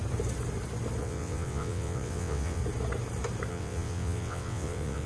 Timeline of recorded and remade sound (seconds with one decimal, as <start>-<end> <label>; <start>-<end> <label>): 0.0-1.0 recorded; 1.0-2.6 remade; 2.6-3.5 recorded; 3.5-5.1 remade